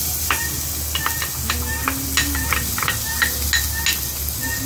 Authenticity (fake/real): real